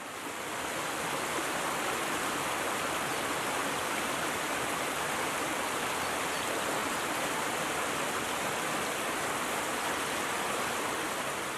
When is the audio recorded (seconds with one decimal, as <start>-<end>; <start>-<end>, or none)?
0.0-3.6; 4.5-6.8; 8.3-11.6